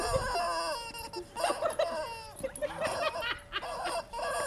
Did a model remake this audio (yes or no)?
no